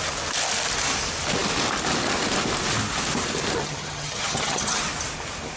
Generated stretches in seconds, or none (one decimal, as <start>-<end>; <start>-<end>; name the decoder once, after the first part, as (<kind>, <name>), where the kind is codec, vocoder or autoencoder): 3.6-4.8 (vocoder, HiFi-GAN)